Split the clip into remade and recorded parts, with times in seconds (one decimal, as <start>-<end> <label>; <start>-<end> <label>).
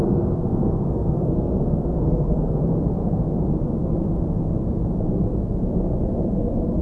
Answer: 0.0-2.6 remade; 2.6-6.8 recorded